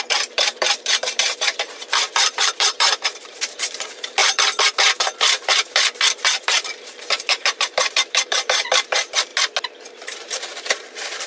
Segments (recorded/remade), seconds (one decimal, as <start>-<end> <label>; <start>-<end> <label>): 0.0-9.3 remade; 9.3-9.9 recorded; 9.9-11.3 remade